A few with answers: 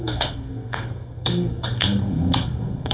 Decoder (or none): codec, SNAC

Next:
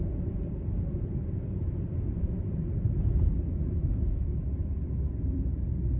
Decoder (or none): vocoder, BigVGAN v2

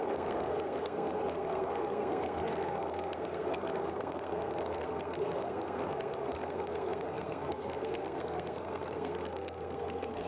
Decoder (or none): codec, SNAC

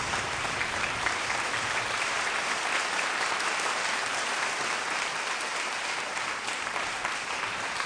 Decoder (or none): vocoder, BigVGAN v2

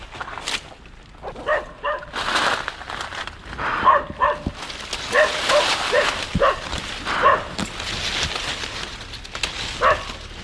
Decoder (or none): none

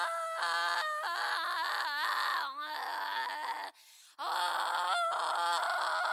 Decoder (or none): none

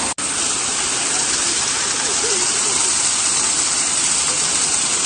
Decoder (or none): none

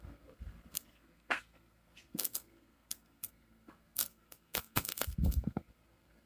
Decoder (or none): codec, SNAC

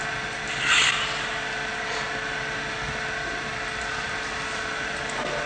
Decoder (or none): none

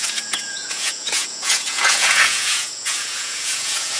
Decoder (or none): vocoder, Vocos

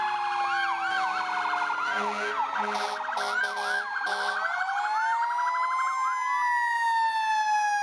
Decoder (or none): none